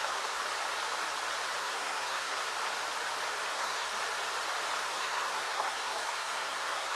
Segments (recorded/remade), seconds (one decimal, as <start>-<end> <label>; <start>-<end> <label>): 0.0-0.4 remade; 0.4-1.6 recorded; 1.6-2.5 remade; 2.5-3.5 recorded; 3.5-3.9 remade; 3.9-4.9 recorded; 4.9-7.0 remade